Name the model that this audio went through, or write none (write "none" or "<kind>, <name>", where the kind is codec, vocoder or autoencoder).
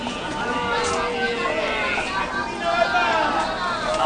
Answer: none